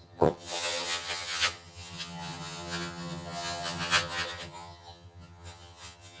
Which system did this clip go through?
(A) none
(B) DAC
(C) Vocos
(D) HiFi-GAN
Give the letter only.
D